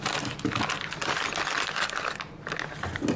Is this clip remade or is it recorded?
recorded